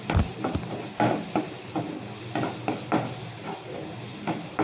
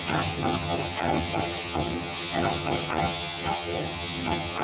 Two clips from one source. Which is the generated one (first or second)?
second